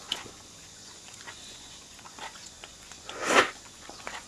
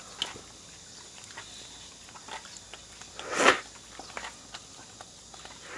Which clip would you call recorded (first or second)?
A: second